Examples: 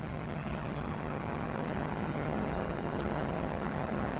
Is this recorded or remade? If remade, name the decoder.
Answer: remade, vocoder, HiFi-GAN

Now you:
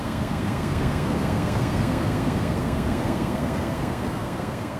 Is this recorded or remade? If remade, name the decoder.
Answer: remade, codec, SNAC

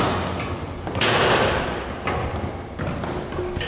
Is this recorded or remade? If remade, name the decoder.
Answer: recorded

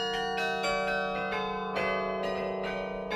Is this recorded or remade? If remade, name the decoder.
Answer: recorded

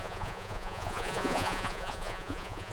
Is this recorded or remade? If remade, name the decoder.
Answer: remade, vocoder, Vocos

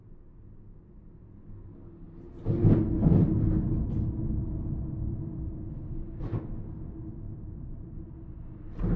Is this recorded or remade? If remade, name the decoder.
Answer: recorded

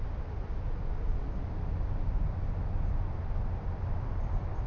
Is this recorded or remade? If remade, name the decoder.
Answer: recorded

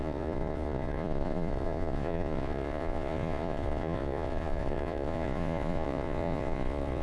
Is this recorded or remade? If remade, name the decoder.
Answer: remade, vocoder, Vocos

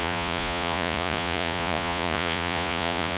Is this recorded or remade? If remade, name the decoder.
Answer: remade, vocoder, Vocos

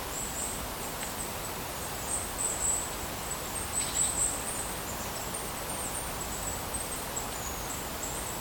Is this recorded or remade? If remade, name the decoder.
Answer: remade, vocoder, BigVGAN v2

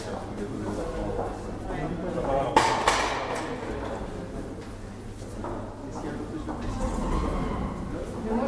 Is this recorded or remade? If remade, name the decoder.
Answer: recorded